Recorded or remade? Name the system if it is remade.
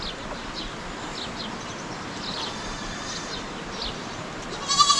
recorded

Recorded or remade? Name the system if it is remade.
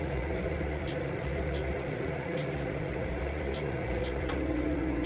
remade, vocoder, Vocos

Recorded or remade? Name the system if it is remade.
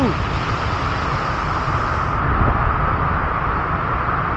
recorded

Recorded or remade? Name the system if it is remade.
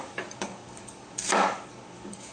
remade, codec, DAC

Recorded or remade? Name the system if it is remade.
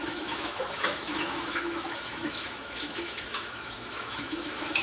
remade, autoencoder, DAC-VAE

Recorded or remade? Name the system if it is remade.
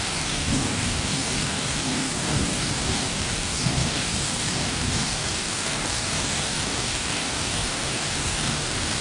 remade, codec, DAC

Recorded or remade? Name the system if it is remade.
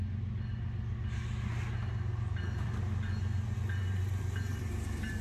recorded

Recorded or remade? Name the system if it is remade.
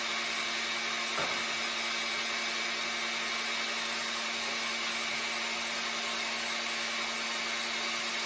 recorded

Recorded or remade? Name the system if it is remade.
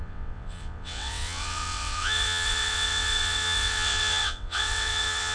remade, vocoder, WaveNeXt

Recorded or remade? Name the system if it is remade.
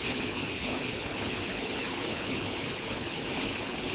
remade, codec, HILCodec